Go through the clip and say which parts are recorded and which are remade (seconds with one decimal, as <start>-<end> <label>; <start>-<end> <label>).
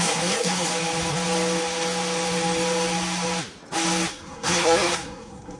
0.0-0.7 remade; 0.7-4.1 recorded; 4.1-5.6 remade